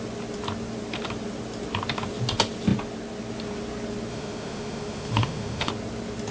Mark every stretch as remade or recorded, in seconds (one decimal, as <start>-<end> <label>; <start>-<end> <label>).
0.0-4.1 recorded; 4.1-5.7 remade; 5.7-6.3 recorded